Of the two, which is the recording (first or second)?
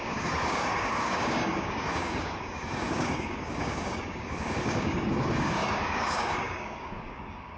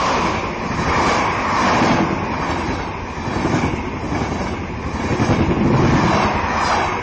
second